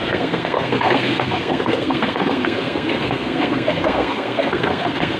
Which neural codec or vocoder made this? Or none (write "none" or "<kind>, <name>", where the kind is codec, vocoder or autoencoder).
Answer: codec, SNAC